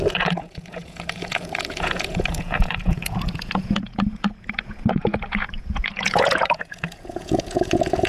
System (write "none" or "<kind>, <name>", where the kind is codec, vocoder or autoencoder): vocoder, Vocos